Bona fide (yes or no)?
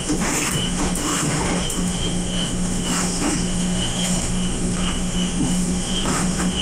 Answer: no